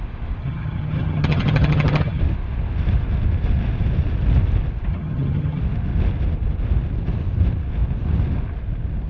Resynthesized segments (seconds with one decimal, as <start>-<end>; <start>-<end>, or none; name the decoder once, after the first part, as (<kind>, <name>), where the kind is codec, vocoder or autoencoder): 0.4-2.2 (vocoder, HiFi-GAN); 4.9-5.6